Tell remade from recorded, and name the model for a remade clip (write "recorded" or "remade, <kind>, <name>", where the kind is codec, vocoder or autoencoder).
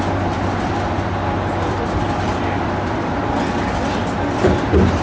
remade, vocoder, BigVGAN v2